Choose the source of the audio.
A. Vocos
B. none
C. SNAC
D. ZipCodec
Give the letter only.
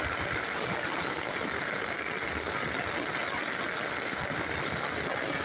B